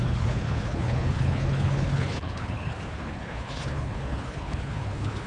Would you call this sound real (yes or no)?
no